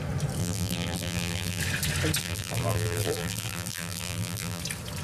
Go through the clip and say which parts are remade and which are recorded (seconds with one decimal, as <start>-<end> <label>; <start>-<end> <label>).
0.0-0.4 recorded; 0.4-1.6 remade; 1.6-2.2 recorded; 2.2-4.6 remade; 4.6-5.0 recorded